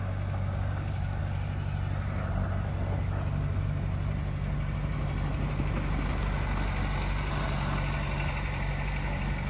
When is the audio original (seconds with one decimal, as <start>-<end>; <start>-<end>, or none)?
1.2-9.5